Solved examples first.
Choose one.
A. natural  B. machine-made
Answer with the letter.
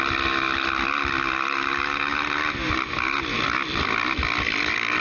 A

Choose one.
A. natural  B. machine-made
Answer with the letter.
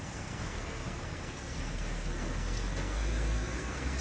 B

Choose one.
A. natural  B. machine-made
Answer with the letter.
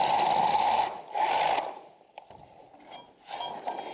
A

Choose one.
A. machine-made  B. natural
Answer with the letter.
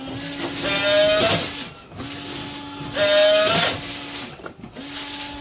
B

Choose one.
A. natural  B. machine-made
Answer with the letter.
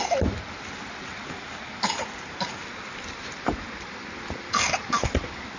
A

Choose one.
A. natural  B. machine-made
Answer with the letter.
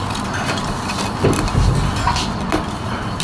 A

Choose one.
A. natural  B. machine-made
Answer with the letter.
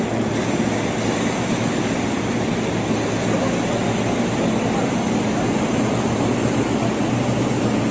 A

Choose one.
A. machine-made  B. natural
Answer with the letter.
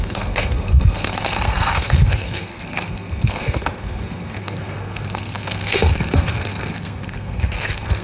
A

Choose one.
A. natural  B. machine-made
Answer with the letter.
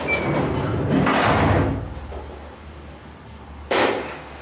A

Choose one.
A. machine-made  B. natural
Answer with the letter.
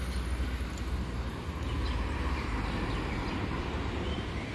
B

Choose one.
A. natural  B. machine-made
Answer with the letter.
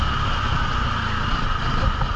A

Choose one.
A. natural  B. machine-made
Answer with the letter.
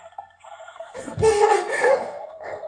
B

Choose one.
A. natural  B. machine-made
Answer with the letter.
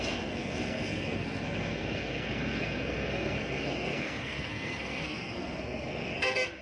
B